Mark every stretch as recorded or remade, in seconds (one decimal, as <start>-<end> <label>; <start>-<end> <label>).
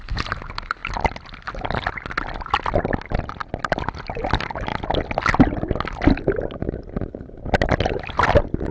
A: 0.0-8.7 recorded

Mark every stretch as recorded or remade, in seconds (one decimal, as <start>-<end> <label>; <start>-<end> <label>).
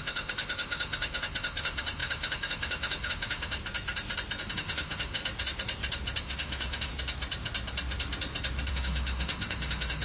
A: 0.0-3.6 remade; 3.6-4.5 recorded; 4.5-5.2 remade; 5.2-6.2 recorded; 6.2-6.9 remade; 6.9-8.7 recorded; 8.7-10.0 remade